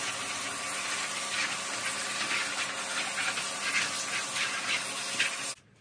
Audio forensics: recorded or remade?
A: recorded